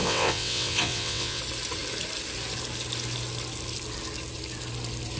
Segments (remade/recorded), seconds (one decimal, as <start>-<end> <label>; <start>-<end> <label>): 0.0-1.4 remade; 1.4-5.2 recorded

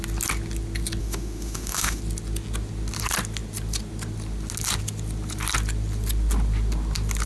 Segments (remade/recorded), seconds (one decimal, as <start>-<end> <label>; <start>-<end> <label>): 0.0-1.0 recorded; 1.0-2.0 remade; 2.0-7.3 recorded

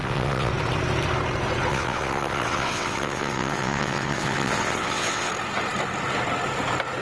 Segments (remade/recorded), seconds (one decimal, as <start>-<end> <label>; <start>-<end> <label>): 0.0-0.5 remade; 0.5-1.7 recorded; 1.7-5.3 remade; 5.3-7.0 recorded

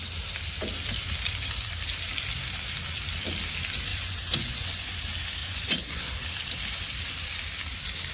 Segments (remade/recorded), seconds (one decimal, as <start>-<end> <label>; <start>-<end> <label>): 0.0-3.9 recorded; 3.9-5.0 remade; 5.0-5.4 recorded; 5.4-6.2 remade; 6.2-8.1 recorded

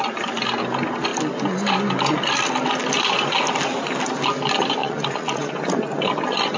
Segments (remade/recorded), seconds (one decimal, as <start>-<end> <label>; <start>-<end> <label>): 0.0-4.8 recorded; 4.8-5.5 remade; 5.5-6.6 recorded

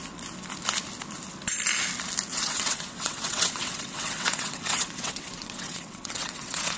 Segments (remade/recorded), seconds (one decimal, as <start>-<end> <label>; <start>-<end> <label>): 0.0-2.3 recorded; 2.3-6.8 remade

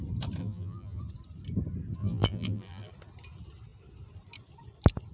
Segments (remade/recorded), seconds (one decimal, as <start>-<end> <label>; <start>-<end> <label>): 0.0-0.4 recorded; 0.4-1.0 remade; 1.0-2.0 recorded; 2.0-2.9 remade; 2.9-5.1 recorded

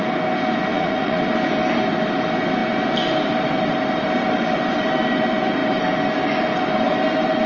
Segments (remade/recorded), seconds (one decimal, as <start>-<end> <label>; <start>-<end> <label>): 0.0-0.7 recorded; 0.7-1.2 remade; 1.2-7.5 recorded